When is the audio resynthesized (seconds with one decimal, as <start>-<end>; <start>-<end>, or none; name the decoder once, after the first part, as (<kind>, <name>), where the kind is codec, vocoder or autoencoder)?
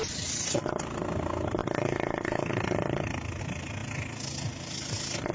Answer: none